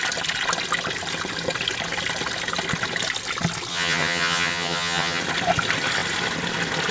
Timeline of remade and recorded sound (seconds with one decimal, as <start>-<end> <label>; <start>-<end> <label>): 0.0-3.7 recorded; 3.7-5.2 remade; 5.2-6.9 recorded